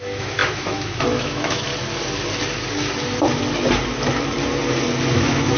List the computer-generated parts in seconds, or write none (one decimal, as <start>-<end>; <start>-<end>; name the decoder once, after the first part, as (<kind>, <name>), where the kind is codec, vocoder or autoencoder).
0.0-1.7 (autoencoder, DAC-VAE); 5.1-5.6